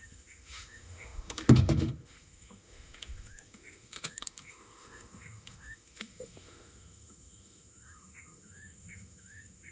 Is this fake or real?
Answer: fake